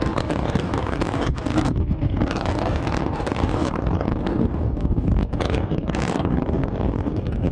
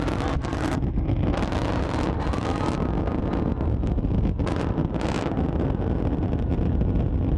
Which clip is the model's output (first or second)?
first